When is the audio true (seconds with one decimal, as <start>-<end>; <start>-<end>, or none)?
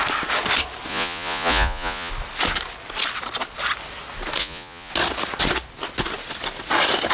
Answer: 0.0-0.9; 2.1-4.4; 4.9-7.1